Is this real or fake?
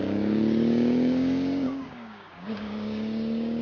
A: fake